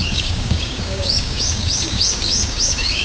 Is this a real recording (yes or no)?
no